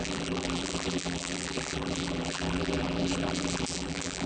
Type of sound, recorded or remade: remade